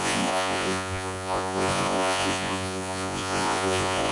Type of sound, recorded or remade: remade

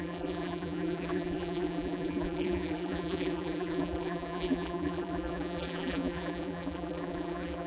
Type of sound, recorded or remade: remade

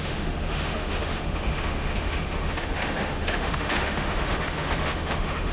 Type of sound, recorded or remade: remade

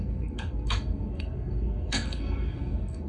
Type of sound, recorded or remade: remade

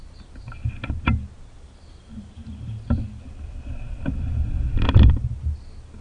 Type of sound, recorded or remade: recorded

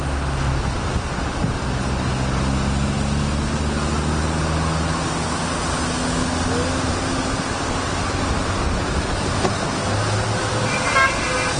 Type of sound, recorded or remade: recorded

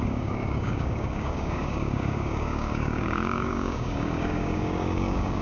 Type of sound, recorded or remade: remade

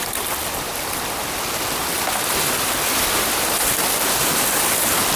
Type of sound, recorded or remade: recorded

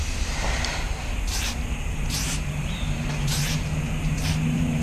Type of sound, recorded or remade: remade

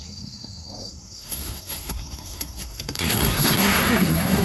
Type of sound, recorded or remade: remade